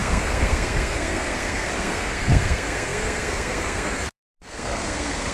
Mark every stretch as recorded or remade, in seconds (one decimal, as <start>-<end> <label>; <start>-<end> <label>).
0.0-5.3 remade